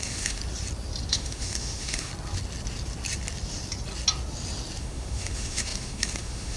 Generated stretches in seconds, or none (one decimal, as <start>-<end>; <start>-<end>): 0.0-0.4; 1.1-2.1; 4.8-6.6